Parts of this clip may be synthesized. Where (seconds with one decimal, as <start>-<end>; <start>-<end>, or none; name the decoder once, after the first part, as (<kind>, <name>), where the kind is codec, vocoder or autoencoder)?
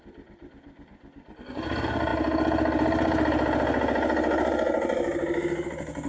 none